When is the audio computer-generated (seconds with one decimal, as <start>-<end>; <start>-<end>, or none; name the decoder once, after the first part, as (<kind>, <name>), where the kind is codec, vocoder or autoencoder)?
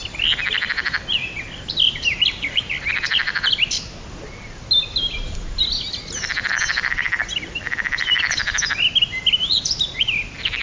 none